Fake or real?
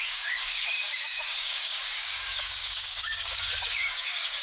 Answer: fake